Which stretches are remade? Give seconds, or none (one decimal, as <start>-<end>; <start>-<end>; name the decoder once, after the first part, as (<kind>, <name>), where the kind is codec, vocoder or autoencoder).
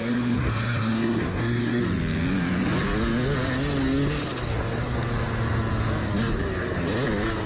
0.0-1.8 (codec, SNAC)